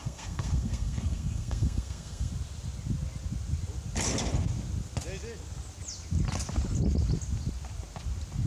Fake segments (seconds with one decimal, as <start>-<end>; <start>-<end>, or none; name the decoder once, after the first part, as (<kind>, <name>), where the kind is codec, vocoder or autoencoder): 0.0-2.3 (codec, SNAC)